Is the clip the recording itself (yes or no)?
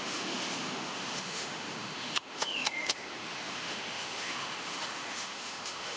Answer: no